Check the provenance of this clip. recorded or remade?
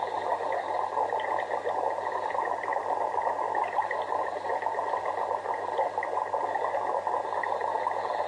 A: recorded